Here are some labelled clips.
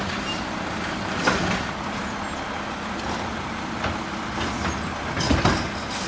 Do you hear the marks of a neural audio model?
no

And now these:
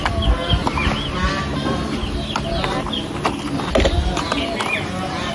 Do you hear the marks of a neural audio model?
no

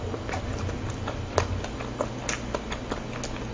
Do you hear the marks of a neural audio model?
no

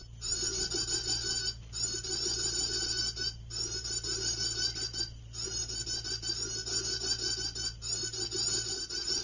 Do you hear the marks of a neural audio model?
no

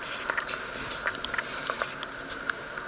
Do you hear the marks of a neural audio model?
no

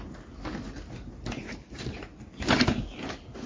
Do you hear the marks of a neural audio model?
no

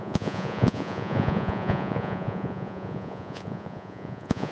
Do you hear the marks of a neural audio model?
yes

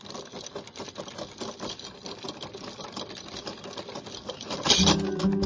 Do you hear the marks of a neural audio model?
no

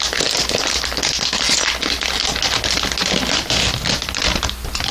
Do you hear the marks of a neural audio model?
no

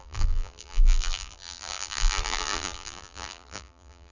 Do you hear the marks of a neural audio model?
yes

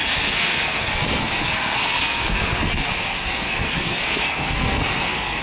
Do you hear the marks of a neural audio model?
yes